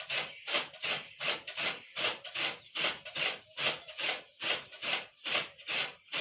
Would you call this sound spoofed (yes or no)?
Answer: yes